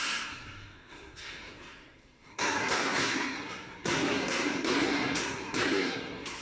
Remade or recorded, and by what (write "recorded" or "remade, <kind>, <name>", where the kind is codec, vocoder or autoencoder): remade, codec, SNAC